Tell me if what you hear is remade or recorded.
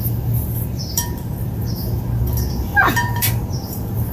remade